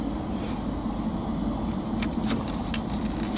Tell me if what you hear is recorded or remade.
recorded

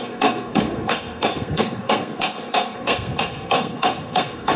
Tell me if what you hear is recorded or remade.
remade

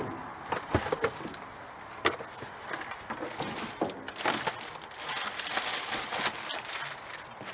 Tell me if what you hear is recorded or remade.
recorded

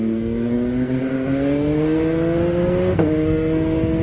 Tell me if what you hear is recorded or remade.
remade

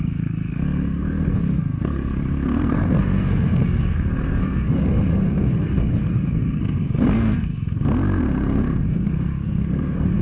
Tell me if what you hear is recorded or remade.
remade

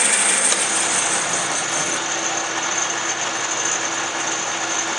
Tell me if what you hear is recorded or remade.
recorded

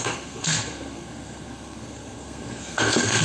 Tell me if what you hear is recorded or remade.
remade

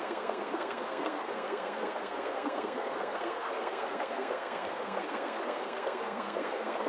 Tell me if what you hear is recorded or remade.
remade